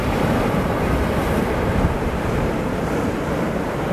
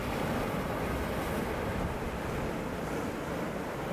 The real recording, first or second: second